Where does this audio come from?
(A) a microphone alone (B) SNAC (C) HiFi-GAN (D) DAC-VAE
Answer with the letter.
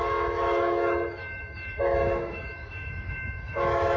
D